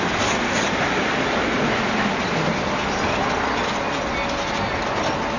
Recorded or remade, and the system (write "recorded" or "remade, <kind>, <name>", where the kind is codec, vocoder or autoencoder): recorded